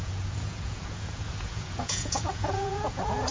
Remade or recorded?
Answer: remade